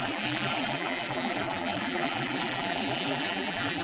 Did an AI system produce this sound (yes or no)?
yes